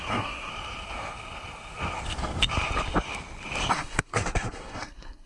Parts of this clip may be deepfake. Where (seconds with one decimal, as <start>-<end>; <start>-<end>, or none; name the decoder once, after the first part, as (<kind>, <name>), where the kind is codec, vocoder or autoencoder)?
0.0-0.5 (codec, SNAC); 3.7-5.3